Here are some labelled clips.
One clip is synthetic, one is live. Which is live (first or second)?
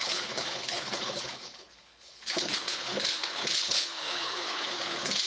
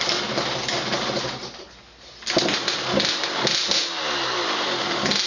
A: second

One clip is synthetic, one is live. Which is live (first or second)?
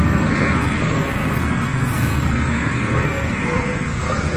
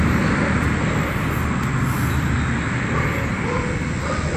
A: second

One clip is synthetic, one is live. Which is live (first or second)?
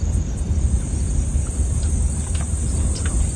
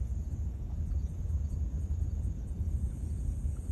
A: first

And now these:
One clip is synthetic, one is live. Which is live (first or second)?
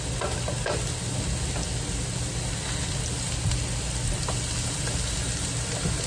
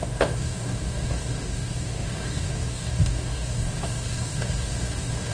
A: first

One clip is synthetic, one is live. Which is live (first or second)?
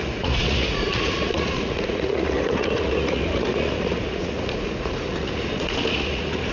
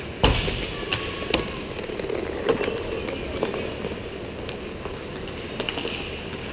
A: second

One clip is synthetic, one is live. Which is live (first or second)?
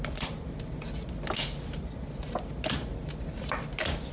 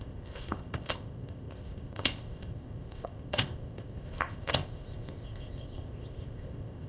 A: first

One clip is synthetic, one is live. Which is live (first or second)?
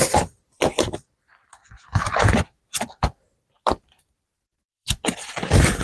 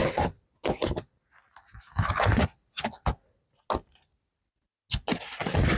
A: second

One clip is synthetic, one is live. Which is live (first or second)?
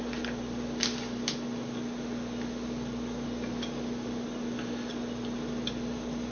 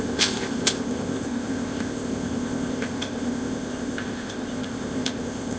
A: first